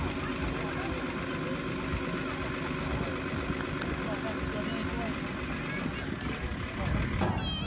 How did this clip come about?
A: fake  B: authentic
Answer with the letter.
B